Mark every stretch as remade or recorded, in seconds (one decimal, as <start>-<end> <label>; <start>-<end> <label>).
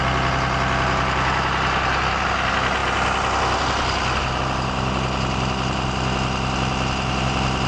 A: 0.0-7.7 recorded